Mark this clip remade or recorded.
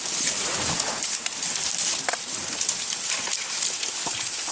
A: recorded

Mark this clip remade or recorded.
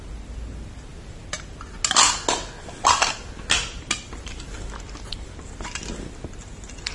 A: recorded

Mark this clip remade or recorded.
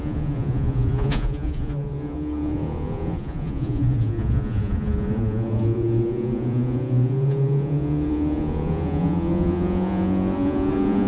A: remade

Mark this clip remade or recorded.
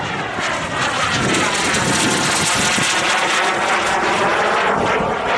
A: recorded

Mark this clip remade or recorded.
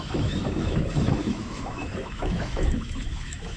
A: remade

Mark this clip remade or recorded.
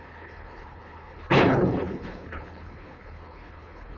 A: remade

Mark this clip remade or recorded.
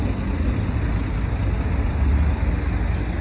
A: recorded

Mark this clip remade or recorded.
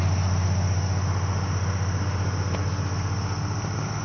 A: recorded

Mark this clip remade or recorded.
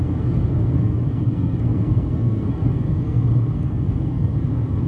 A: remade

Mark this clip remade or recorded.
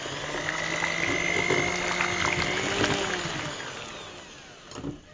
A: recorded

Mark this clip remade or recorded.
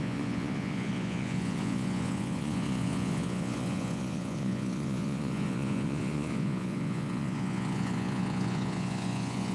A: remade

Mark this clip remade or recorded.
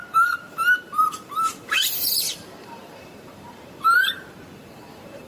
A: remade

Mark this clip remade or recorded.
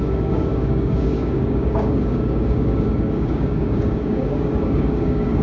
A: remade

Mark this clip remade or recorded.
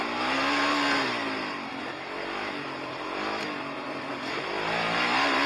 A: recorded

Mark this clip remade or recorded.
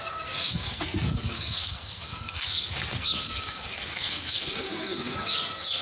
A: remade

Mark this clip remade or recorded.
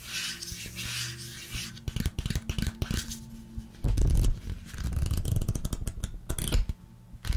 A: recorded